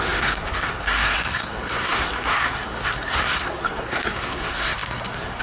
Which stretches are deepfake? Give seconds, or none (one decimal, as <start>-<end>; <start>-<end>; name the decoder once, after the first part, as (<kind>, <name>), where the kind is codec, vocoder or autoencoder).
0.0-5.4 (codec, SNAC)